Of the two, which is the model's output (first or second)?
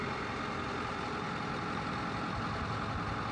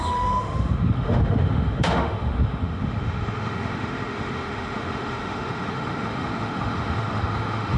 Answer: second